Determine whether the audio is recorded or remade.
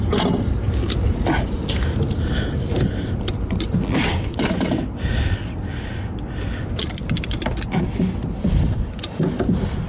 recorded